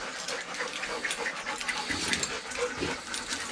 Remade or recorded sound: recorded